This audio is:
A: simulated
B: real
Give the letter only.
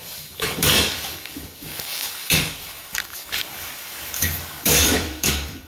A